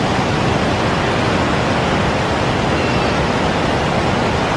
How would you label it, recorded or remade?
recorded